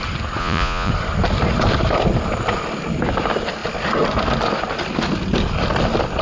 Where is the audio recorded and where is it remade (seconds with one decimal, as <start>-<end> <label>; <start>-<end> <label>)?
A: 0.0-0.4 recorded; 0.4-0.9 remade; 0.9-6.2 recorded